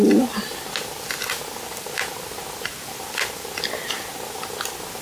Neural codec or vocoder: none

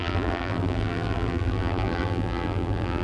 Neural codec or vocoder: vocoder, BigVGAN v2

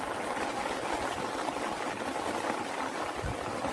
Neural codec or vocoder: none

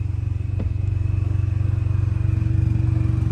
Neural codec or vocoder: none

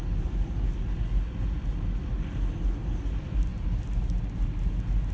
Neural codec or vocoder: none